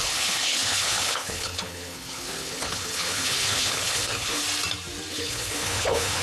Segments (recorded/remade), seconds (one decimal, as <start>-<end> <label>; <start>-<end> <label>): 0.0-4.4 remade; 4.4-5.1 recorded; 5.1-6.2 remade